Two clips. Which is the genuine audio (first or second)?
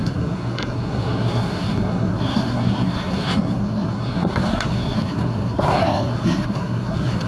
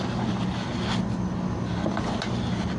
second